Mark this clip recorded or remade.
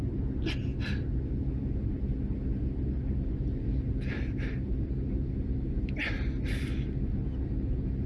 recorded